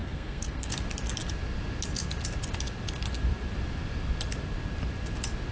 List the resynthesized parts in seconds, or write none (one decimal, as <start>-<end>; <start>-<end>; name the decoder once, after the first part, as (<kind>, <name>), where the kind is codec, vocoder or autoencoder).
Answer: 0.0-0.7 (codec, SNAC)

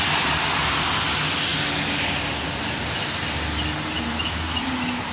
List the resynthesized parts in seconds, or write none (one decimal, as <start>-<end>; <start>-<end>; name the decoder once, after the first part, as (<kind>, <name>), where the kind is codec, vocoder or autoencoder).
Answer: none

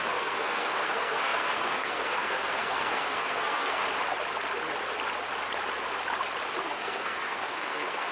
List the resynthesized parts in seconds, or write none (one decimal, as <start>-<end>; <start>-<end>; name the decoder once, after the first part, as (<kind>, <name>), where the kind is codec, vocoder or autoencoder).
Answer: 0.0-3.8 (codec, SNAC); 6.6-8.1

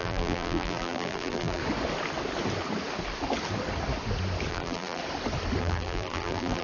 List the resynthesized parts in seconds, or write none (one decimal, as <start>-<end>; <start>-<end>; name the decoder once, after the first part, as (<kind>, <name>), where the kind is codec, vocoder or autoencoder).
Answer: 0.0-1.6 (vocoder, BigVGAN v2); 4.5-5.0; 5.6-6.6